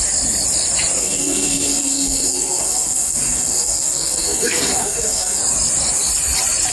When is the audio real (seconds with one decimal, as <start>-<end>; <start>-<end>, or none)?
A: 0.0-1.0; 5.4-6.7

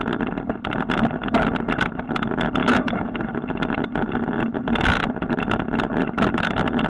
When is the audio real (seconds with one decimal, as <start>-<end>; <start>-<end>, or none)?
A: 0.0-2.6; 3.2-6.9